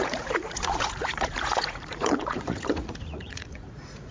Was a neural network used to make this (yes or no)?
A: yes